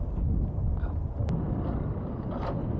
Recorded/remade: recorded